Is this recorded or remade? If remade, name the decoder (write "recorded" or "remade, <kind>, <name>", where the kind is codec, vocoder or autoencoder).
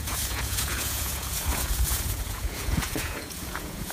remade, vocoder, Vocos